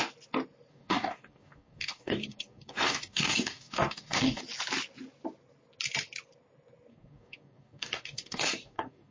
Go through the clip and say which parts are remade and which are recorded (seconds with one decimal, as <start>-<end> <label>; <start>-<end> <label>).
0.0-0.7 recorded; 0.7-4.4 remade; 4.4-6.9 recorded; 6.9-9.1 remade